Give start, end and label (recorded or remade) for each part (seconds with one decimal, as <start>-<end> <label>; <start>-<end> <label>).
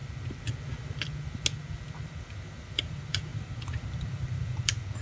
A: 0.0-2.0 recorded; 2.0-5.0 remade